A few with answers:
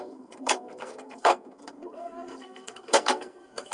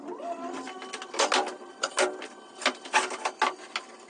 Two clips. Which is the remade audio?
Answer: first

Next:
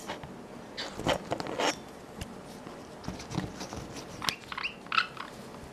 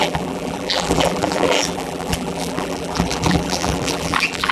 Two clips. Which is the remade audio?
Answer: second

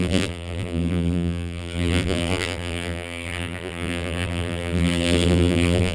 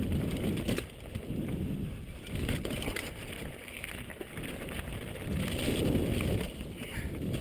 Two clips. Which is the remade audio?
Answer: first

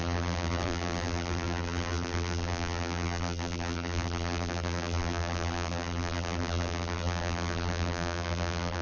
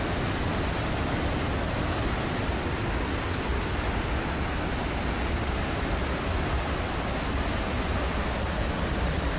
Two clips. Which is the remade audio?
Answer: first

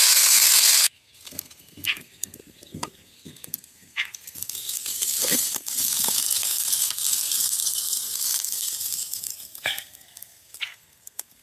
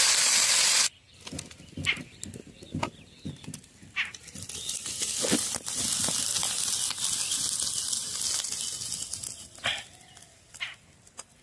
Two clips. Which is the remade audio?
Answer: first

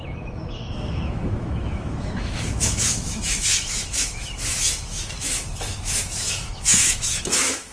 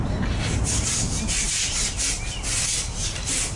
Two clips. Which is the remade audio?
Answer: first